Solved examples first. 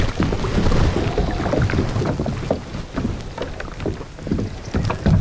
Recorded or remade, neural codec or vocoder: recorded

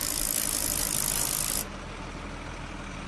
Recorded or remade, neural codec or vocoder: recorded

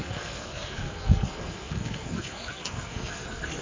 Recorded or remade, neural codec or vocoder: remade, codec, SNAC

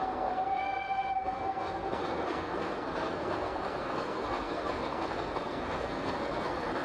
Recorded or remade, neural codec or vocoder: remade, codec, SNAC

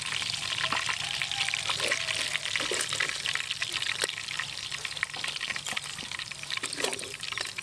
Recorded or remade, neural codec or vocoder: recorded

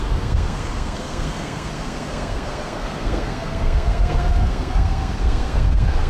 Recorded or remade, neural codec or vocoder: remade, codec, SNAC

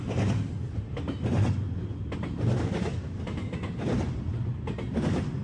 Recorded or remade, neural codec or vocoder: recorded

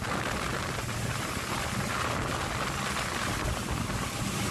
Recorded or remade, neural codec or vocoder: recorded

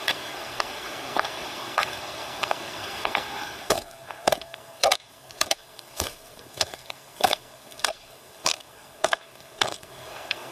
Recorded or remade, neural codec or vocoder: remade, codec, SNAC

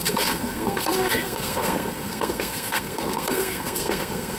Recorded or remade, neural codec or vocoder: remade, codec, SNAC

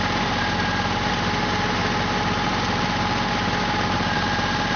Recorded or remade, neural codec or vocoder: recorded